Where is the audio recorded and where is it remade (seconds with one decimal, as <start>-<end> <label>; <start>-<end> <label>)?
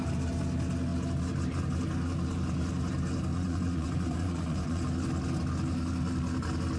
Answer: 0.0-3.3 recorded; 3.3-4.8 remade; 4.8-6.8 recorded